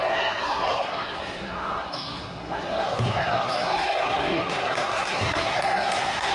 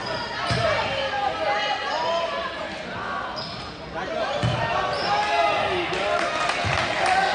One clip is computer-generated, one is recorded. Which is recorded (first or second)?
second